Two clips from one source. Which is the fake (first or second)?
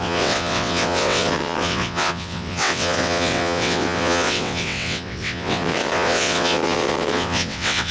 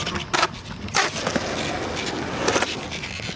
first